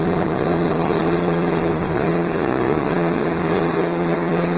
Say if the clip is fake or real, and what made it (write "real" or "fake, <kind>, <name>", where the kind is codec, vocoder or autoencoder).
fake, vocoder, Vocos